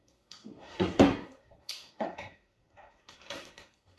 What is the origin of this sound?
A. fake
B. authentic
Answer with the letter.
A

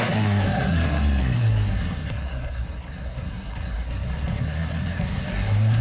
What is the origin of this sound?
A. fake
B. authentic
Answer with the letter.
A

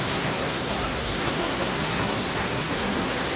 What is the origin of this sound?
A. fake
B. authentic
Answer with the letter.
A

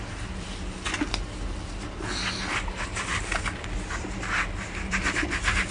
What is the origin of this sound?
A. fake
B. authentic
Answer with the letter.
B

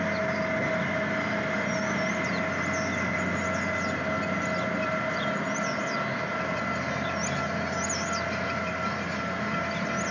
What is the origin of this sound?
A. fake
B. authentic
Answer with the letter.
B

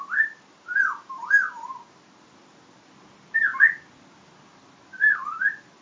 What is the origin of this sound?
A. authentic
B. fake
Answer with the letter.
A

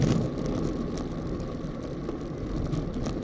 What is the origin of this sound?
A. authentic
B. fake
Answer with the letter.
A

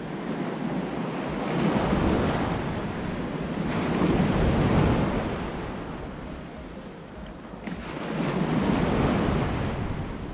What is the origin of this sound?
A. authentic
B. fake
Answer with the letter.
A